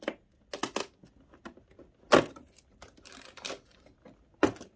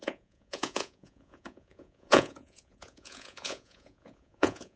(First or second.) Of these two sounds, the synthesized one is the second